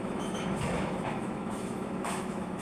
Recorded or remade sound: remade